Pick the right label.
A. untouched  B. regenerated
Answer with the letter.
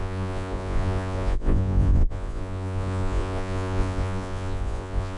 B